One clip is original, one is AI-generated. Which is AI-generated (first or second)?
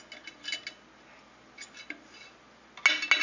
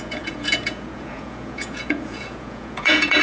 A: second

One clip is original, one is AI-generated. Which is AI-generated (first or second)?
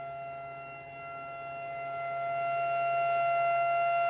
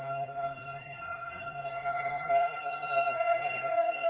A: second